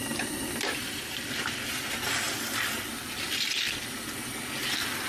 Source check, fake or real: real